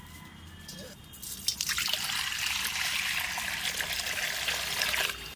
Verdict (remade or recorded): recorded